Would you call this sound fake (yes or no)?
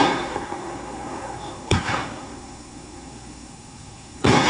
yes